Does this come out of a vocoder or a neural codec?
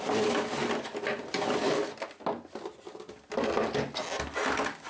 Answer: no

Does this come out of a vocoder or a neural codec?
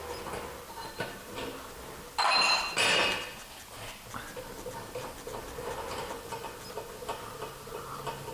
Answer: no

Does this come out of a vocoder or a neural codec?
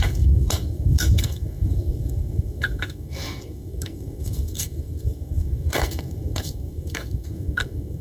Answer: yes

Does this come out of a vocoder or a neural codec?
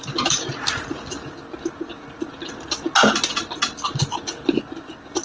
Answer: no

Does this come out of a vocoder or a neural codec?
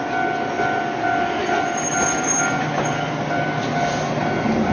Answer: no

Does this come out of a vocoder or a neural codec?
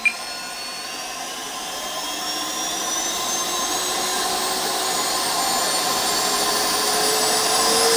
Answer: no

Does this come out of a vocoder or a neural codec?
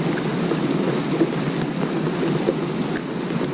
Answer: no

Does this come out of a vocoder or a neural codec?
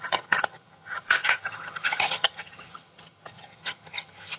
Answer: yes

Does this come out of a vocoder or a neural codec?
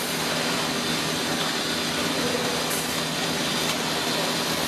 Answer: no